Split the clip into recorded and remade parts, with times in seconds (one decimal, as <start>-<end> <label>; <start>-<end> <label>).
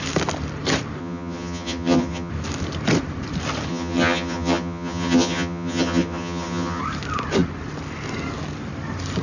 0.0-1.0 recorded; 1.0-2.3 remade; 2.3-3.7 recorded; 3.7-6.8 remade; 6.8-9.2 recorded